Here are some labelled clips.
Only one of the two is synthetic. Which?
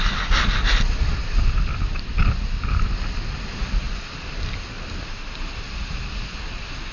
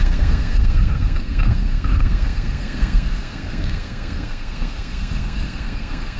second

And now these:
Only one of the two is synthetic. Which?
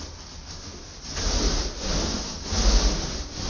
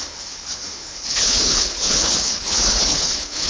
second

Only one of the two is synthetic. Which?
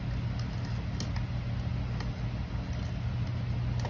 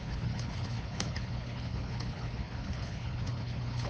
second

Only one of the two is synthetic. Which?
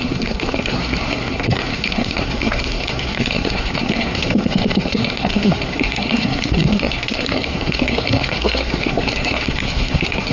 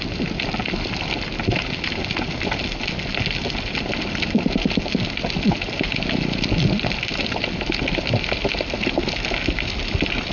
first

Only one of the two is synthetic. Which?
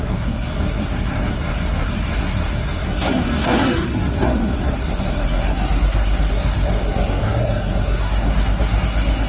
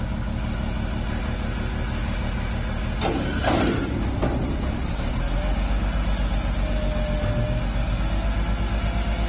first